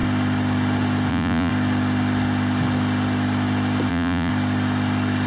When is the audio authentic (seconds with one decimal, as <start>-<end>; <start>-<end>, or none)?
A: 0.0-1.1; 1.5-3.9; 4.3-5.3